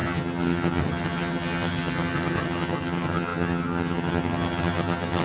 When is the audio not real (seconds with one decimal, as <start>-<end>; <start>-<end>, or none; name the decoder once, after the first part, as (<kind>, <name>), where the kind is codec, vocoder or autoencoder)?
0.0-5.2 (vocoder, HiFi-GAN)